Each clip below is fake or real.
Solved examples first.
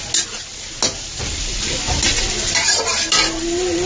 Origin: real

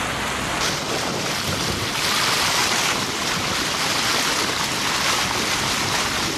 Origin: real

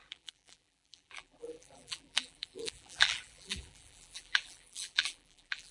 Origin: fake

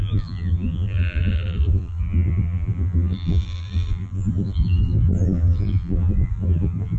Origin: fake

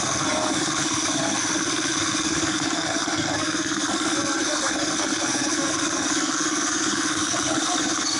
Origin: fake